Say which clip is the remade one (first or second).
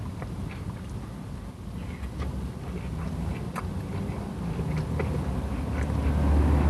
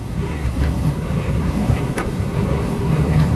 second